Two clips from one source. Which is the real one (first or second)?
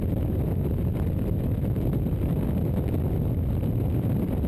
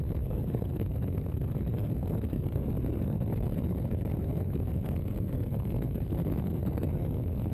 first